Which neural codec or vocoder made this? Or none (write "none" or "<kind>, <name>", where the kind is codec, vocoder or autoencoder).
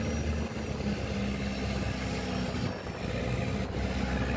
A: none